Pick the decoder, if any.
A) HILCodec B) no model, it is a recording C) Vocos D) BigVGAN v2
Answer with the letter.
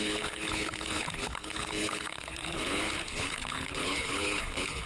A